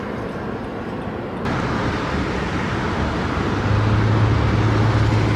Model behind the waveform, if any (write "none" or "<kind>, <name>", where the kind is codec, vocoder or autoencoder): none